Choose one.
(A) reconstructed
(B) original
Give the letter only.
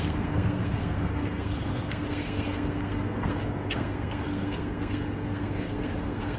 A